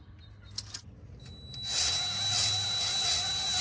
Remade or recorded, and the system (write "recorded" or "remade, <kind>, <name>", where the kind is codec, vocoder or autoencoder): recorded